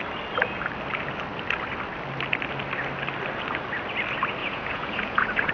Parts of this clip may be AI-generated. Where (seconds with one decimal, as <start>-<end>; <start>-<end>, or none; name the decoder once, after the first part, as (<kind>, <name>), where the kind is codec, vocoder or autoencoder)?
4.4-5.5 (vocoder, Vocos)